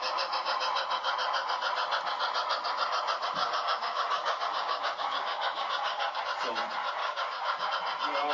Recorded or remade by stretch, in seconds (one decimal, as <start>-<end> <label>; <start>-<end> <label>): 0.0-3.4 recorded; 3.4-6.2 remade; 6.2-7.0 recorded; 7.0-7.7 remade; 7.7-8.3 recorded